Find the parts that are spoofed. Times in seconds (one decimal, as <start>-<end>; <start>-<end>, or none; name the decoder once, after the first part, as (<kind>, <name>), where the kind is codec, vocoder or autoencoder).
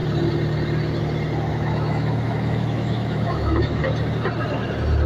1.5-3.8 (autoencoder, DAC-VAE)